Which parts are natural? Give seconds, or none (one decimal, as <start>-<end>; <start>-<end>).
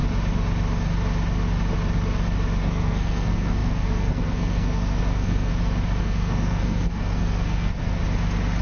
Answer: 0.0-2.6; 5.5-6.0; 8.0-8.6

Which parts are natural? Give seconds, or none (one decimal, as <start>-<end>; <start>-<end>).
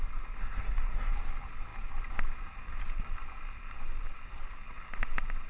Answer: 0.0-0.4; 1.1-5.5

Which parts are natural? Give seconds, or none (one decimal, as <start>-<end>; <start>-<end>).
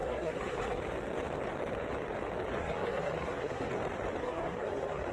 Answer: 0.8-2.6; 3.7-4.2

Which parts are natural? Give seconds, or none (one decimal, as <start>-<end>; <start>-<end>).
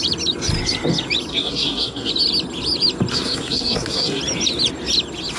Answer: 0.0-1.3; 2.1-3.1; 4.2-5.4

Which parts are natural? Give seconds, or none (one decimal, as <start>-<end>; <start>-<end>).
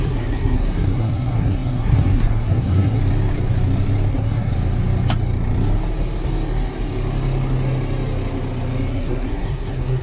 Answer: 3.0-4.1; 4.5-8.9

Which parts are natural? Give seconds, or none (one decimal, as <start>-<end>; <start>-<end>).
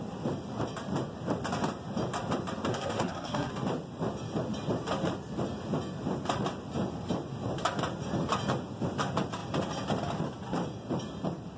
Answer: 0.0-2.7; 3.5-11.6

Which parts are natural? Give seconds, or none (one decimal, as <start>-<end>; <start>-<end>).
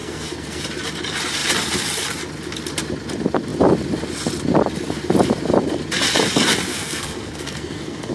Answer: 0.6-6.7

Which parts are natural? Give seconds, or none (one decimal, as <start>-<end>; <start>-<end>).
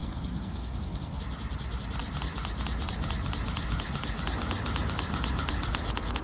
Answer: 1.2-6.2